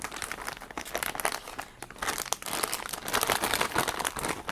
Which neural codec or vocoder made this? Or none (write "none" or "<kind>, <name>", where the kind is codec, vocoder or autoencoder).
none